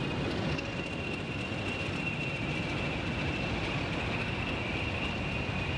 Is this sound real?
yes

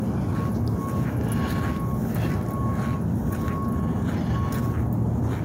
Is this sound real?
yes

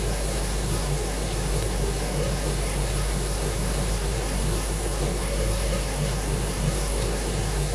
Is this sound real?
no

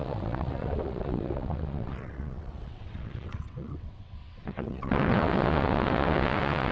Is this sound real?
no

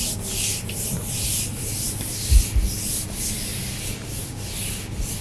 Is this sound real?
yes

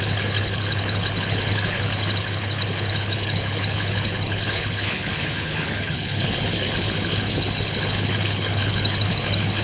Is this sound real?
no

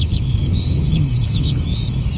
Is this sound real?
no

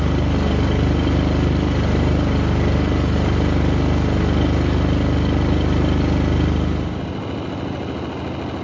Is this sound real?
yes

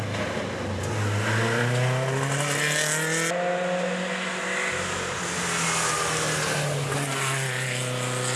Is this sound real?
yes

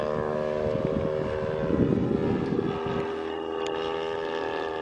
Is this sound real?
yes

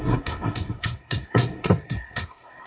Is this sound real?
no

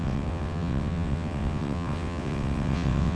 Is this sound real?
no